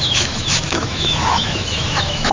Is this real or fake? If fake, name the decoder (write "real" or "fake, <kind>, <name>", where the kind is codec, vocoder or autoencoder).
fake, autoencoder, DAC-VAE